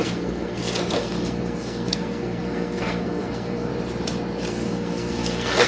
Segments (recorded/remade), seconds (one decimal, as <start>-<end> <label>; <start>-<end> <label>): 0.0-3.7 remade; 3.7-4.5 recorded; 4.5-5.7 remade